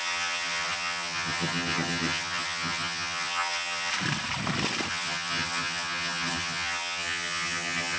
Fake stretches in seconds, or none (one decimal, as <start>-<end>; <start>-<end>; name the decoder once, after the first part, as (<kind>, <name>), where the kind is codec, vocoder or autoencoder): 0.0-3.9 (vocoder, HiFi-GAN); 4.9-8.0